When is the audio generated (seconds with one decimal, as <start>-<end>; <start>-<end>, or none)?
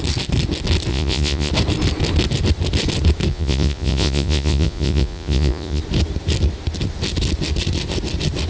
0.9-1.5; 3.3-5.8